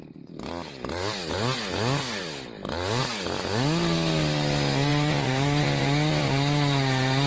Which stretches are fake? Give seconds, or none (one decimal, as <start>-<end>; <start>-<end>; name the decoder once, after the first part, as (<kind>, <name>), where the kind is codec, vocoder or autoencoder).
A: 2.2-3.0 (vocoder, BigVGAN v2); 4.9-7.3